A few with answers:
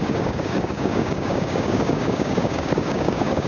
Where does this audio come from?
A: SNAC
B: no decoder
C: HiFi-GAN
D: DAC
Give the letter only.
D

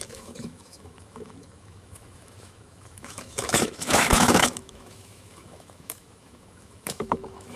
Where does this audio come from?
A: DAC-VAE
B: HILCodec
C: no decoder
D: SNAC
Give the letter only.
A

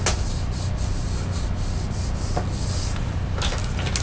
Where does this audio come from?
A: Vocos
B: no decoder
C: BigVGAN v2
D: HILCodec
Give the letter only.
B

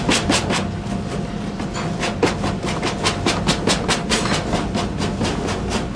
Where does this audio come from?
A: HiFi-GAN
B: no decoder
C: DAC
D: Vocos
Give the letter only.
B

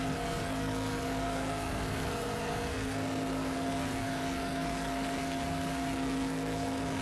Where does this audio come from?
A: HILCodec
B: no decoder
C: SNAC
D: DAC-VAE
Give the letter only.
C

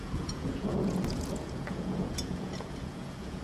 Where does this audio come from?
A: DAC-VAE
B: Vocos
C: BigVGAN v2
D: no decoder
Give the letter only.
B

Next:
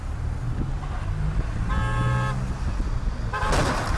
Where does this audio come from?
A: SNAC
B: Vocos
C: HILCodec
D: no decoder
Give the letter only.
D